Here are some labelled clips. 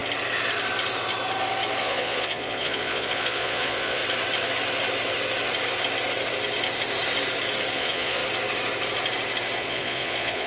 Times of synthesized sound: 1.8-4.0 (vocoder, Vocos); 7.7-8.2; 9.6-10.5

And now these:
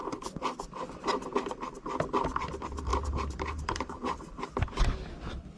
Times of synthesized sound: 1.1-1.7 (vocoder, BigVGAN v2); 2.9-5.1

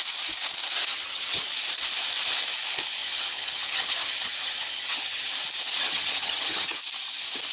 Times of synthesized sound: 0.9-1.5 (vocoder, HiFi-GAN); 3.0-5.3; 5.8-6.8

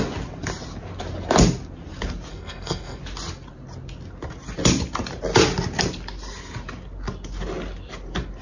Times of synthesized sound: 2.3-3.0 (codec, SNAC)

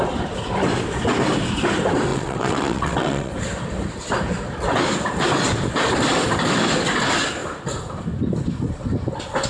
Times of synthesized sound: 2.1-3.3 (vocoder, WaveNeXt)

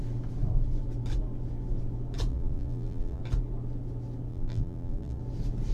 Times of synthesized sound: 2.3-3.2 (vocoder, BigVGAN v2); 4.3-5.2

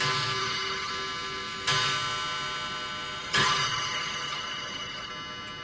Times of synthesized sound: 0.4-0.9 (codec, HILCodec); 3.2-5.1

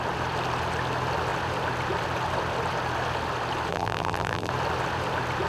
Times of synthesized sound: 3.7-4.5 (vocoder, BigVGAN v2)